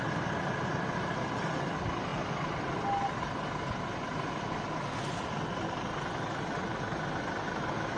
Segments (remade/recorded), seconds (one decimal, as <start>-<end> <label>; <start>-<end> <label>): 0.0-8.0 recorded